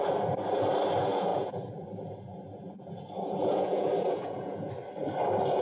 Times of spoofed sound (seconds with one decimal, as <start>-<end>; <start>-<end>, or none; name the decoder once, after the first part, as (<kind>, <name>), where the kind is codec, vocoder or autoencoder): 1.3-4.7 (vocoder, Vocos)